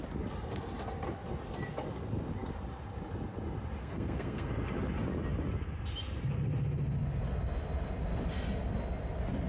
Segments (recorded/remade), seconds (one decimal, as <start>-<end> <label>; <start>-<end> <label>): 0.0-3.8 recorded; 3.8-4.5 remade; 4.5-9.5 recorded